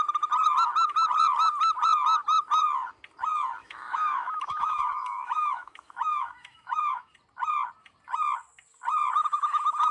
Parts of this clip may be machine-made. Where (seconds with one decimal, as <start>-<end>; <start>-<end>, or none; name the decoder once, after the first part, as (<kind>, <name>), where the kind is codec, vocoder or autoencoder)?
3.6-7.1 (autoencoder, DAC-VAE); 9.2-9.9